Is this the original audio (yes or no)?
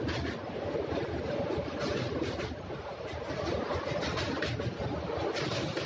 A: yes